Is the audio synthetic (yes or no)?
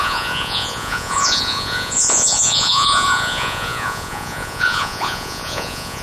yes